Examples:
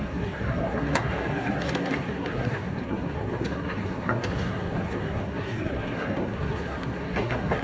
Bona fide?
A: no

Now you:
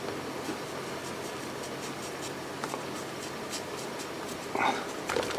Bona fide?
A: yes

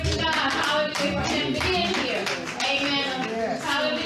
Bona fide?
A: yes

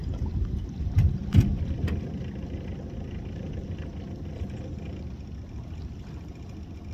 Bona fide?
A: yes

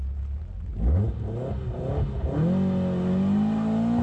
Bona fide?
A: yes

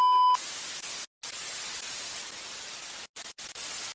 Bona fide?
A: yes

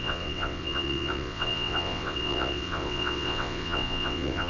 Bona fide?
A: no